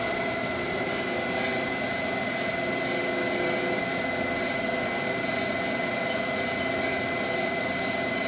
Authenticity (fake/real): real